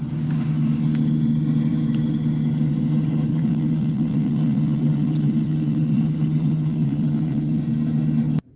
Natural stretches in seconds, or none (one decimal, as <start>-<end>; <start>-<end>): 0.0-3.3; 7.6-8.6